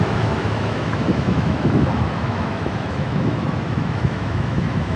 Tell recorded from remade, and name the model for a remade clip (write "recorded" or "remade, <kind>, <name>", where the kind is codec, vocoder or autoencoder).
remade, autoencoder, DAC-VAE